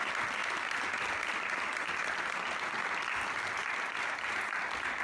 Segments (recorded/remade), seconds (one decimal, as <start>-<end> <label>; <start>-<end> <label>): 0.0-5.0 recorded